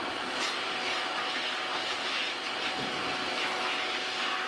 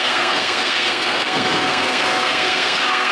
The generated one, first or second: second